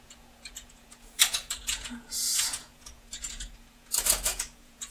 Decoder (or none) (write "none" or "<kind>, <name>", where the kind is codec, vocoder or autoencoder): vocoder, Vocos